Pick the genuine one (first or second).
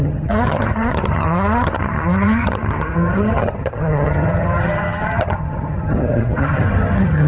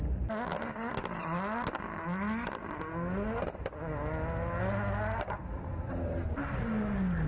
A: second